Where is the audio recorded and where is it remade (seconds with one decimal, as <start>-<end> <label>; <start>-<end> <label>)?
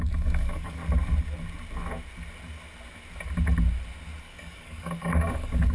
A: 0.0-0.8 remade; 0.8-4.2 recorded; 4.2-5.7 remade